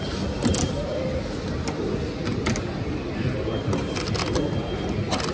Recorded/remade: recorded